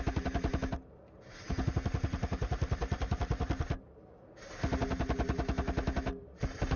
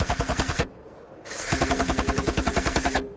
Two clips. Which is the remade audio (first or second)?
second